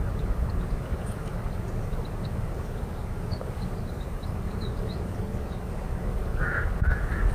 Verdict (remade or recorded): remade